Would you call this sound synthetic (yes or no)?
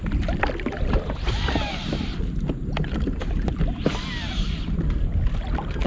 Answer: no